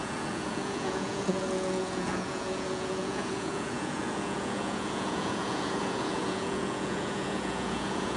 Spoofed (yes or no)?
yes